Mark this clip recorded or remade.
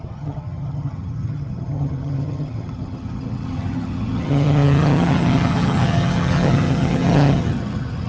remade